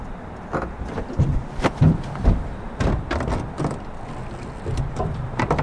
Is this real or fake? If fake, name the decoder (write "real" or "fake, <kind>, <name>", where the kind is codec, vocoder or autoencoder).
fake, vocoder, BigVGAN v2